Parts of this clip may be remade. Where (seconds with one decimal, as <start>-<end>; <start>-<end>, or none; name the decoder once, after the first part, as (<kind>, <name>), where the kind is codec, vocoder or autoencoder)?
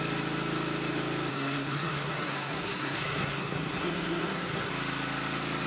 1.3-4.7 (codec, SNAC)